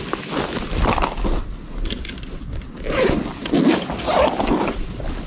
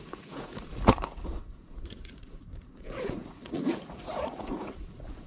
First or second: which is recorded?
first